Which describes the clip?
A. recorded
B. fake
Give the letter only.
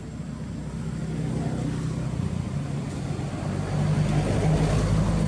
A